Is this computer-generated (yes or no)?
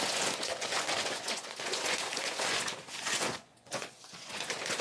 yes